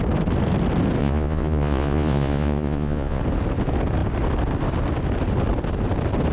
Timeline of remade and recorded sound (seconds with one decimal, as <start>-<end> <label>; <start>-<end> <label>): 0.0-1.0 recorded; 1.0-3.2 remade; 3.2-6.3 recorded

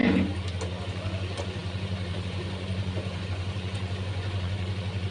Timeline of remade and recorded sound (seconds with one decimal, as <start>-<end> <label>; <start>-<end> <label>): 0.0-0.8 recorded; 0.8-5.1 remade

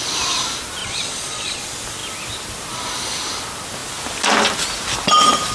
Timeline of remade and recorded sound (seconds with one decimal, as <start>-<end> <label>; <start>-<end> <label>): 0.0-0.8 recorded; 0.8-1.6 remade; 1.6-5.5 recorded